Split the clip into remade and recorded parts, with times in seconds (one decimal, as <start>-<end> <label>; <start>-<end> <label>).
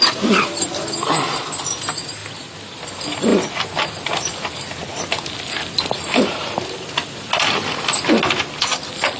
0.0-9.2 recorded